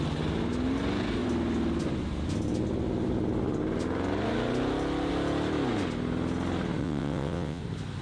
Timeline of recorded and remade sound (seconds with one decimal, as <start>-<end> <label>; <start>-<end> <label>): 0.0-6.8 recorded; 6.8-7.6 remade; 7.6-8.0 recorded